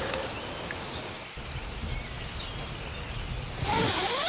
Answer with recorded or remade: recorded